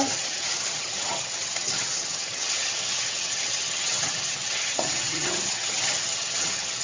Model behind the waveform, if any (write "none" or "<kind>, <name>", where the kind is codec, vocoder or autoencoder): vocoder, HiFi-GAN